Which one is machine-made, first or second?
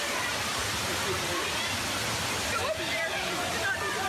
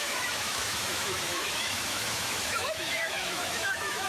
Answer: second